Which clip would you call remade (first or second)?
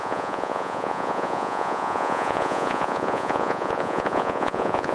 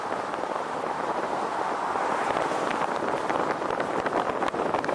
first